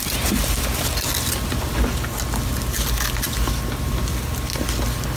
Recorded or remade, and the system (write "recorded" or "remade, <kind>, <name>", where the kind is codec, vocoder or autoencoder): recorded